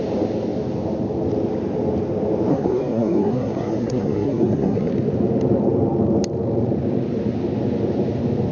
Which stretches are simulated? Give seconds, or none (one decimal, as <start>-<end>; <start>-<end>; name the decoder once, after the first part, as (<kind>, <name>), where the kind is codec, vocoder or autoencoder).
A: 2.5-4.9 (codec, SNAC)